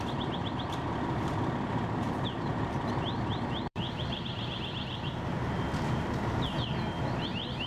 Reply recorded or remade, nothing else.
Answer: remade